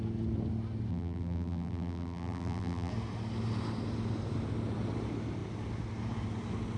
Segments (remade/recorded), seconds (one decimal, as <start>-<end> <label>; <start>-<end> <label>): 0.0-0.9 recorded; 0.9-2.9 remade; 2.9-6.8 recorded